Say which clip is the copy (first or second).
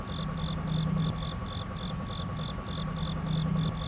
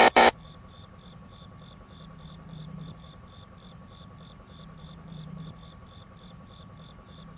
second